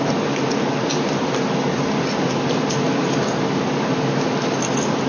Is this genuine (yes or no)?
yes